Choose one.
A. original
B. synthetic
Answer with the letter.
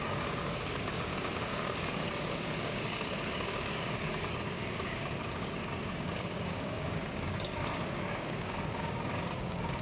B